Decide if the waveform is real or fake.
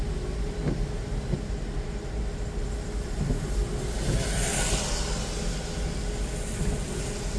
real